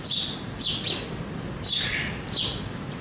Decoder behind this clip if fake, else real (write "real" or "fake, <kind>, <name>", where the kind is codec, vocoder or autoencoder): real